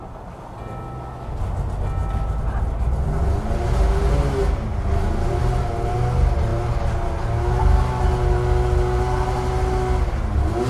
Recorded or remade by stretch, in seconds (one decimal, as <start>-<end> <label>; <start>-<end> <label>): 0.0-10.7 recorded